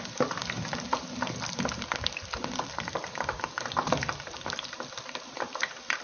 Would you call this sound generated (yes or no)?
no